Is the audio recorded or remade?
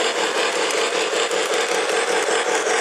recorded